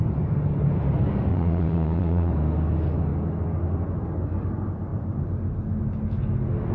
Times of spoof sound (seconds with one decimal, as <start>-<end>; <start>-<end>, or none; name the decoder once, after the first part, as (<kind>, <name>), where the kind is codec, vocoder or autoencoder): 1.3-2.3 (vocoder, Vocos)